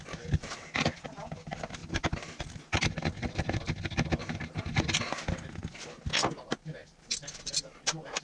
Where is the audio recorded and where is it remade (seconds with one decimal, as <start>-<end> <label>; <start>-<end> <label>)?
0.0-8.2 recorded